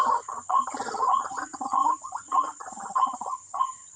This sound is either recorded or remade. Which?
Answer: remade